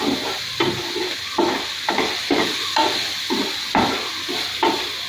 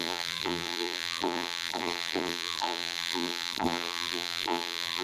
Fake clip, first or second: second